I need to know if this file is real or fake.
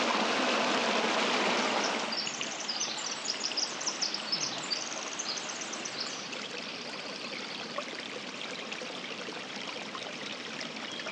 fake